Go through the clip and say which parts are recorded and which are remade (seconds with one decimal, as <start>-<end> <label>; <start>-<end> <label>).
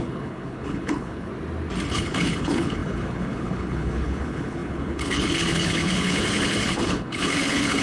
0.0-1.3 remade; 1.3-1.9 recorded; 1.9-7.8 remade